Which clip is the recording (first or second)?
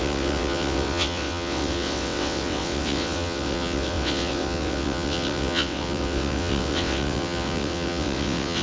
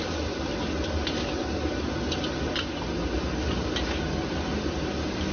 second